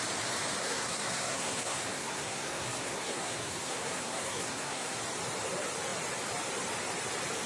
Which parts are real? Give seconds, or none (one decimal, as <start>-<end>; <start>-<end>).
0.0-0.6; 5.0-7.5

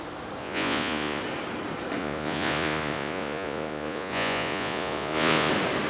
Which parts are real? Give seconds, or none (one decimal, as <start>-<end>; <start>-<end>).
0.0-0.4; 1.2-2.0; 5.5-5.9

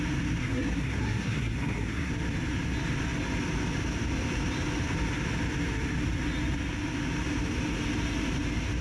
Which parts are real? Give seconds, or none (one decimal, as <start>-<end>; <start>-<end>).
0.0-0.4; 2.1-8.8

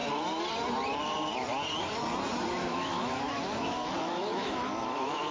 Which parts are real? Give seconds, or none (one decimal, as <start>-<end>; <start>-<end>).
0.0-2.6